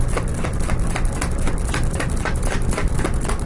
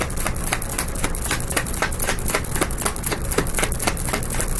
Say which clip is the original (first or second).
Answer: second